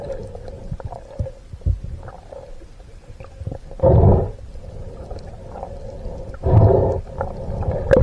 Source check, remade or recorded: recorded